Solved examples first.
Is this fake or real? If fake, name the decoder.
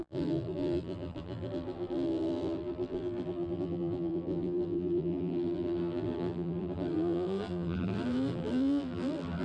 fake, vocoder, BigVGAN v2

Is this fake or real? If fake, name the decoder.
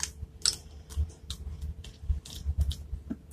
real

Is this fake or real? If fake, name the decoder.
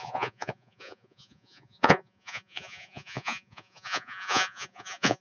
fake, vocoder, Vocos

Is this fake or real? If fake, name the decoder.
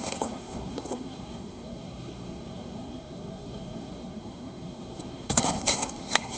fake, codec, SNAC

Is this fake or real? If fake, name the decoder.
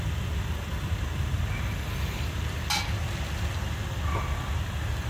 real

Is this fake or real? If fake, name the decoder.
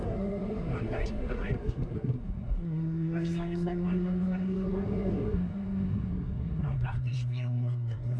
fake, codec, SNAC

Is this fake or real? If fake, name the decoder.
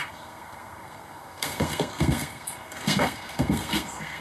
fake, codec, SNAC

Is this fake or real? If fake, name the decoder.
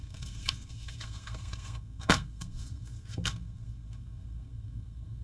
fake, codec, SNAC